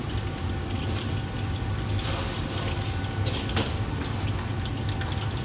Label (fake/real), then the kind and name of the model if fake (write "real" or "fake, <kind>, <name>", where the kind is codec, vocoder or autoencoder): real